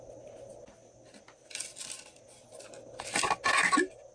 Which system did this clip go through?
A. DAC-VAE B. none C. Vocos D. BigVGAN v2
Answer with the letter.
B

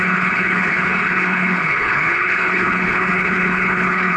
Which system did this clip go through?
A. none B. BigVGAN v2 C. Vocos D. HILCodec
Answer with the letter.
D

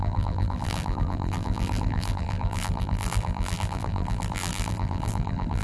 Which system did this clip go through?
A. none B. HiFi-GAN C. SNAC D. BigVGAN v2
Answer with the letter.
D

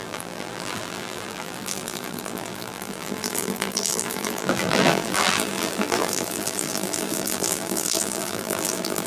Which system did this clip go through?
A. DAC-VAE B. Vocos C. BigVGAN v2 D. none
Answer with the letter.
C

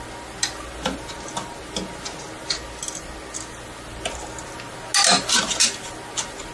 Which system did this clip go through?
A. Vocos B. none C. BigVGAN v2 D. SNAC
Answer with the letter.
B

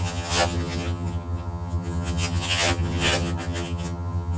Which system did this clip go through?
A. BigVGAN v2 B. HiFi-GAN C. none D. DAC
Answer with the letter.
B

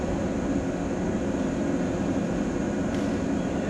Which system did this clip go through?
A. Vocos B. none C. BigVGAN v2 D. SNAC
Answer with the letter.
B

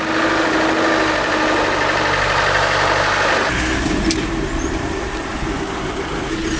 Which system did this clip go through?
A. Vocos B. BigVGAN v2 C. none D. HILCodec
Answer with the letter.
C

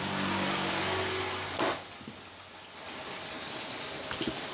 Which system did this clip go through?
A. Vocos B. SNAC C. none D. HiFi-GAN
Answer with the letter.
C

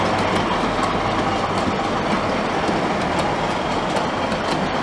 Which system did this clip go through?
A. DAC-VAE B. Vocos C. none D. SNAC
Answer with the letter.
C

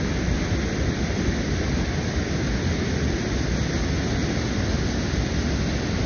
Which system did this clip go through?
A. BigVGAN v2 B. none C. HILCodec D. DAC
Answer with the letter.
B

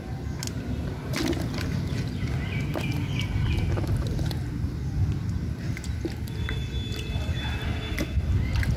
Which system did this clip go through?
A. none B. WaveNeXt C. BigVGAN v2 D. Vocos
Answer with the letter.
A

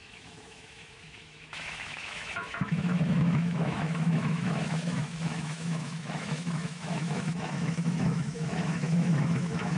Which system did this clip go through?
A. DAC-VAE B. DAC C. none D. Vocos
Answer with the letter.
A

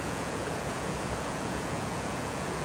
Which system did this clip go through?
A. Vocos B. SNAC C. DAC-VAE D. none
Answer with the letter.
A